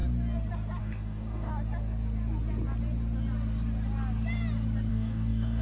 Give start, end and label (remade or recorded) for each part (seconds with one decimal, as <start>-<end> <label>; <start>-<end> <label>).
0.0-0.8 recorded; 0.8-1.5 remade; 1.5-4.9 recorded; 4.9-5.6 remade